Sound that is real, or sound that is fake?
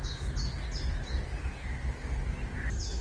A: real